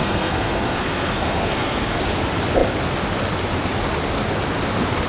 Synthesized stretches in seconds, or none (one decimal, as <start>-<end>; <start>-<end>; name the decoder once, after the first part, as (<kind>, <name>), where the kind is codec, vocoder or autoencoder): 0.0-2.0 (codec, SNAC)